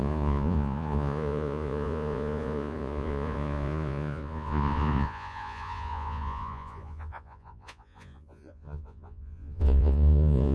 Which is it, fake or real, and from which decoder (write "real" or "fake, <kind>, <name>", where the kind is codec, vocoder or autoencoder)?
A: fake, vocoder, Vocos